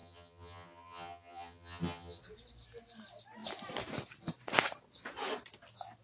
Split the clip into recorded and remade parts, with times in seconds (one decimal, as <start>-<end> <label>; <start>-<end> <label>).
0.0-2.2 remade; 2.2-6.0 recorded